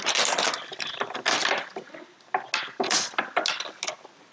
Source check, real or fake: real